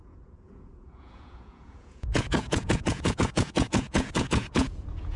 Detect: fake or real fake